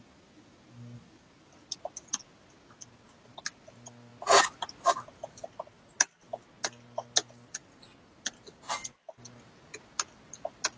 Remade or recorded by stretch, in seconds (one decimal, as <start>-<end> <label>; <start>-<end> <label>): 0.0-10.8 recorded